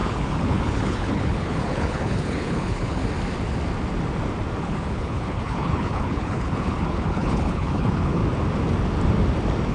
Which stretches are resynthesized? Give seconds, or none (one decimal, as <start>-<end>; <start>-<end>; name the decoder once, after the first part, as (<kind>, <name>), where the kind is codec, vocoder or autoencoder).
0.0-3.0 (codec, HILCodec); 4.6-8.2